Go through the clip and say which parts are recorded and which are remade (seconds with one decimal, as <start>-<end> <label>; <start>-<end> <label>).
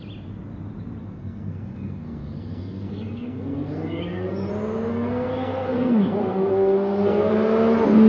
0.0-1.0 recorded; 1.0-4.5 remade; 4.5-4.9 recorded; 4.9-7.3 remade; 7.3-8.1 recorded